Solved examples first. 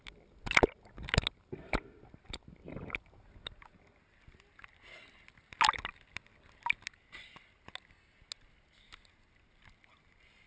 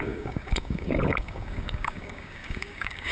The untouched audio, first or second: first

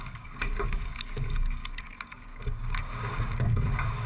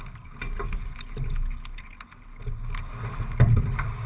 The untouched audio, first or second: second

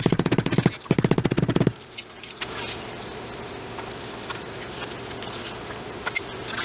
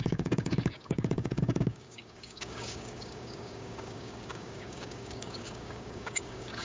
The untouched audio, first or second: first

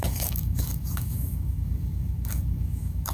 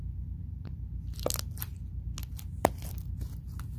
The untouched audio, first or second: second